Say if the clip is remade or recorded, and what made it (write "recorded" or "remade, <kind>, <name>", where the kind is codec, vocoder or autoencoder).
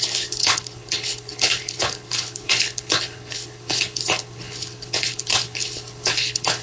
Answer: remade, codec, HILCodec